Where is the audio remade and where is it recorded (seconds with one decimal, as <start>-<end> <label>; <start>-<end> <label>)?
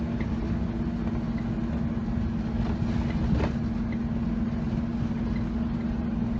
0.0-6.4 recorded